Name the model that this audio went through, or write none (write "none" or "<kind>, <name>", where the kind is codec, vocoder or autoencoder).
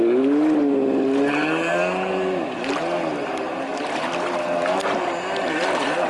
none